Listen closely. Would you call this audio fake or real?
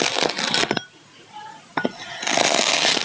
real